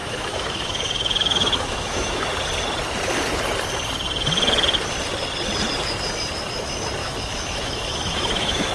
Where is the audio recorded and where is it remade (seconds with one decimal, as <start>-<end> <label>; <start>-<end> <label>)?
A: 0.0-2.3 remade; 2.3-7.0 recorded; 7.0-8.7 remade